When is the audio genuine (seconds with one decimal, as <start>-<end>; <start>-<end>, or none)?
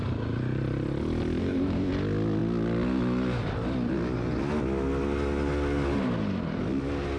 0.0-1.4; 1.9-7.2